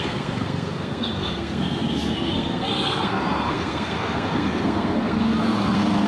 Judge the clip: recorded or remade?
remade